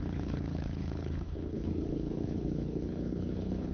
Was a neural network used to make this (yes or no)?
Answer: yes